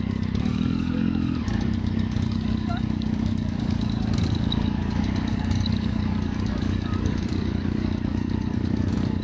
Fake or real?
fake